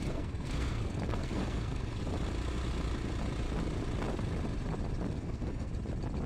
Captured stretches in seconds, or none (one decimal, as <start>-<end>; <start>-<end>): 2.0-5.2; 5.7-6.3